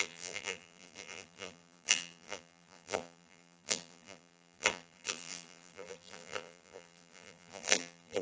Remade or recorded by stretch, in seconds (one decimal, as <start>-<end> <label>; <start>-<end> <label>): 0.0-8.2 remade